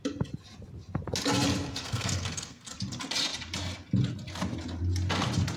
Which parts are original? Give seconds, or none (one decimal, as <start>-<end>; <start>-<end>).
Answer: 0.0-1.7; 2.7-5.6